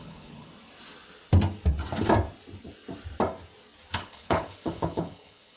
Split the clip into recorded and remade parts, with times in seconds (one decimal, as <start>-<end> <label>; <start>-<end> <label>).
0.0-0.5 remade; 0.5-3.9 recorded; 3.9-5.6 remade